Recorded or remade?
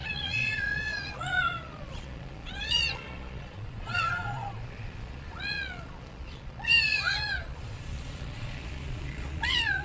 remade